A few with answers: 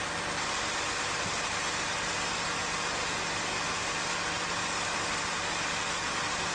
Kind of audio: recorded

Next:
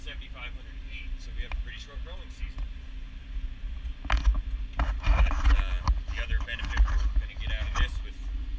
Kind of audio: recorded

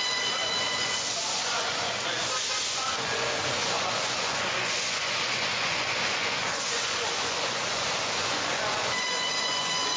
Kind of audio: remade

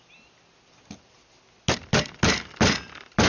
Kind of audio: recorded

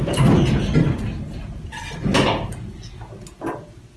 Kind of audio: recorded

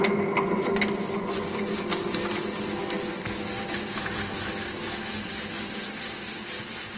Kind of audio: recorded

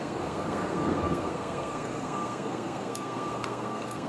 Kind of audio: remade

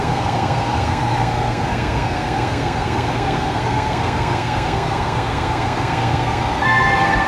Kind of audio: remade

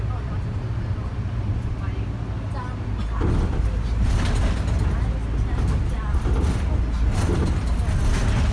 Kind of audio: recorded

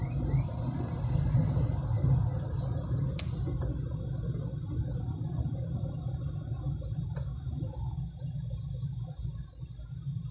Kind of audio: recorded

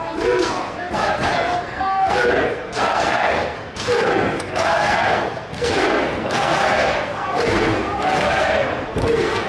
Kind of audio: remade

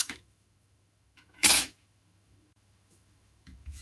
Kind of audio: remade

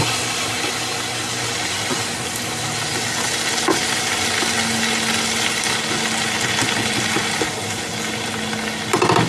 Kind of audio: recorded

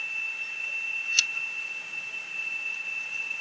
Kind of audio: recorded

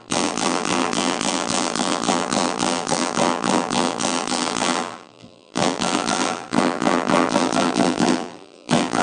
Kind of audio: remade